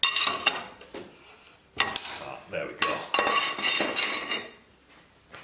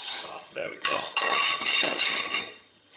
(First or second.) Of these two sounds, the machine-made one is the second